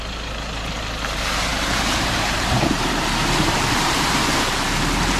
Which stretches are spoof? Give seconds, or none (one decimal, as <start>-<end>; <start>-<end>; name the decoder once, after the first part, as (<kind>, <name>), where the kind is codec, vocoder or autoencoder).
1.5-4.1 (vocoder, BigVGAN v2)

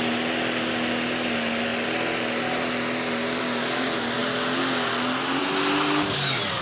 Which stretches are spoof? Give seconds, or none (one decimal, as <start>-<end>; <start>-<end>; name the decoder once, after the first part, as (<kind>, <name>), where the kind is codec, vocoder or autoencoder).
none

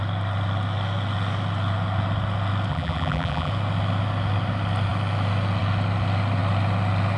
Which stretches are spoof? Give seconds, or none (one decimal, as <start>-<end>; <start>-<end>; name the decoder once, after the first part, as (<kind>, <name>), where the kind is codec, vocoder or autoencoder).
2.7-3.5 (vocoder, BigVGAN v2)

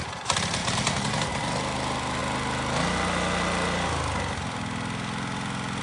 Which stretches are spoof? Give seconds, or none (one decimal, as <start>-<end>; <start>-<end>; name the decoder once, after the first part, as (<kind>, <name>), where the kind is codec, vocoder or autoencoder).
0.6-1.3 (vocoder, BigVGAN v2)

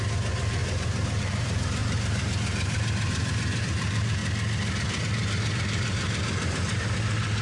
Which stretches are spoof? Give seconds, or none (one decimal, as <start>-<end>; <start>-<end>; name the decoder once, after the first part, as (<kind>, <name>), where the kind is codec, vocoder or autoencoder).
0.0-4.2 (vocoder, BigVGAN v2); 5.0-7.4

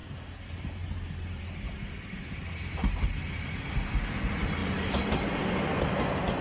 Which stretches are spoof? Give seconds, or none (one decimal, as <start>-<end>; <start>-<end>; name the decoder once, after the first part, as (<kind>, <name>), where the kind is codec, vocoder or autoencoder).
0.0-3.7 (vocoder, BigVGAN v2); 4.6-5.4

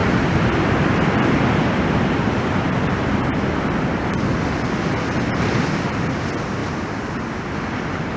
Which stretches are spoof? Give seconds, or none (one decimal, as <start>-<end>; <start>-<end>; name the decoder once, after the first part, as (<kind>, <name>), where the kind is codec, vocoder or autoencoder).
0.0-1.3 (vocoder, BigVGAN v2); 6.6-7.3

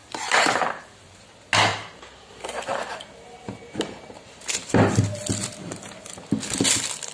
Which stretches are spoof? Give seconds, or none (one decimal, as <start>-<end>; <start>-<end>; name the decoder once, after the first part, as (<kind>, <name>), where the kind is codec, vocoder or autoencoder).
0.0-1.2 (vocoder, BigVGAN v2); 1.7-2.3; 2.7-4.9